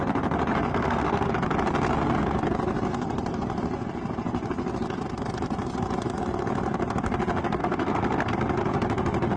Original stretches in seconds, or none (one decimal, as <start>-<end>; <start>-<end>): 0.0-0.7; 1.3-7.6; 8.3-9.4

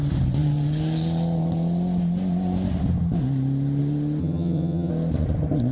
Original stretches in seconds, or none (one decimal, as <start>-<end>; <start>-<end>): 0.0-4.2; 4.9-5.7